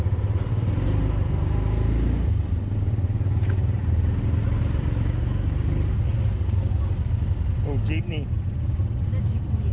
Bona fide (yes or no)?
yes